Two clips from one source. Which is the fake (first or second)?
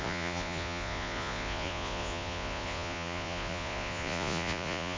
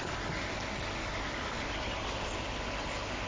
first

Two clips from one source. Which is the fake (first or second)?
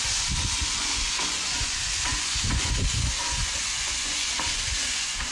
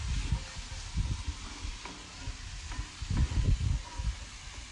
first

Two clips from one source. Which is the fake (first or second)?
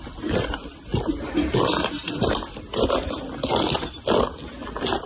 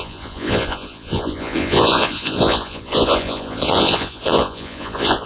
second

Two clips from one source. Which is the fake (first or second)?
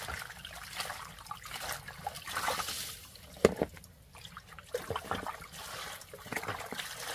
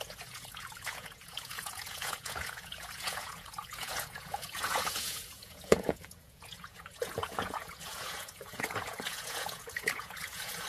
second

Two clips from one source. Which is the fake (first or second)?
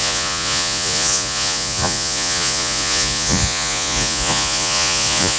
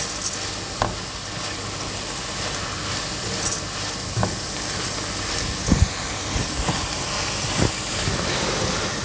first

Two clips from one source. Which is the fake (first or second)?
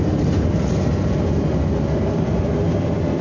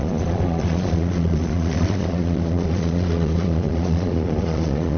second